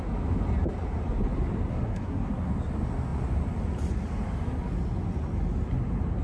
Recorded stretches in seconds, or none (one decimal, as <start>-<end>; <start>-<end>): 0.0-1.7; 2.5-6.2